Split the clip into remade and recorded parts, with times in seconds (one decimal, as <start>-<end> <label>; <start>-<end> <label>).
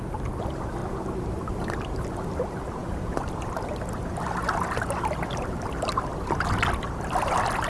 0.0-7.7 recorded